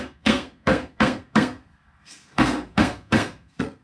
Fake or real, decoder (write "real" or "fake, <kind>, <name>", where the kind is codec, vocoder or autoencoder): fake, codec, SNAC